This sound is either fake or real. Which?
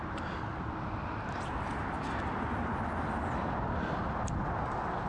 real